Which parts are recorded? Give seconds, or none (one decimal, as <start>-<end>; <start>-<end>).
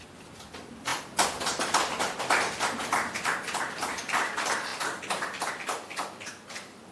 0.0-6.9